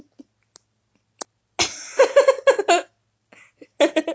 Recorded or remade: recorded